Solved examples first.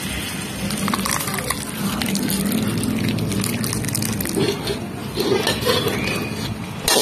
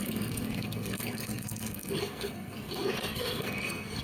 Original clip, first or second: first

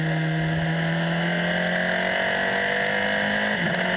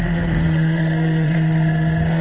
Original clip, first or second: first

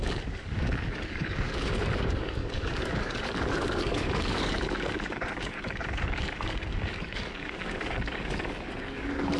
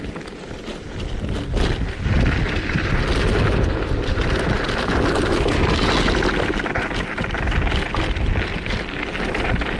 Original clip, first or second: second